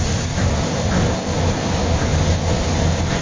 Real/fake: real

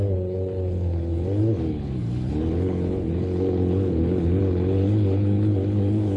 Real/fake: fake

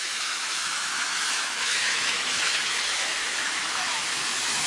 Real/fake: fake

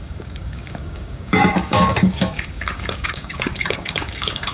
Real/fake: fake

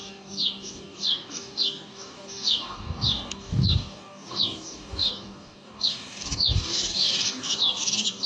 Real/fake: fake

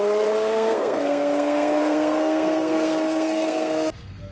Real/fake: fake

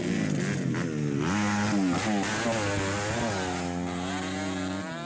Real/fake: real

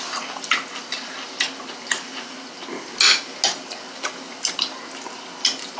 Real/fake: real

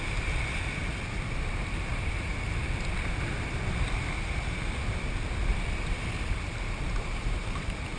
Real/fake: real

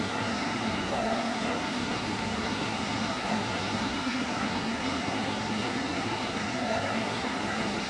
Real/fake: fake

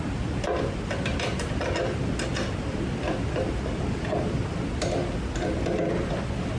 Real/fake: real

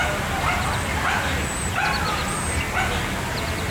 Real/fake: real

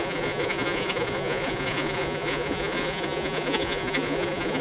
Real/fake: fake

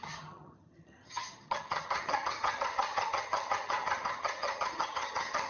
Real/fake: fake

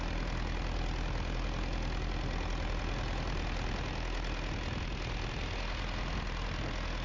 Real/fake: real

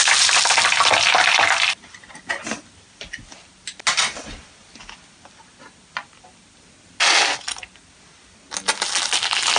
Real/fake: real